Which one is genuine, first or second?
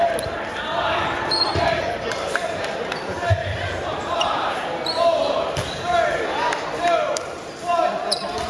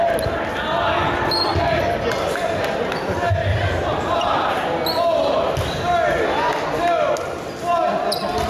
second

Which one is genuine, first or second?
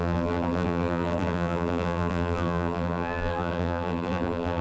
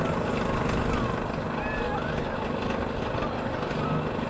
second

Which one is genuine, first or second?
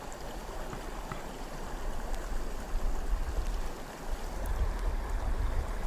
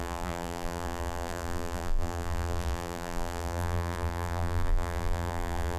first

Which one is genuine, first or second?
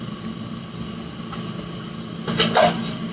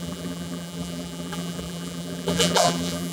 first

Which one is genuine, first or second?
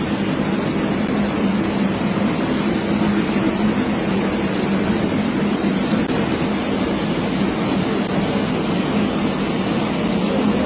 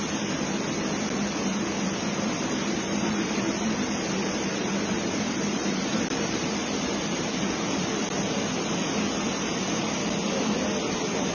first